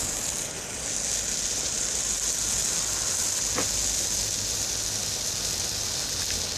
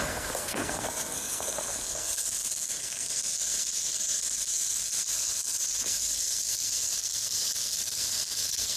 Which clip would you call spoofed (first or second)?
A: second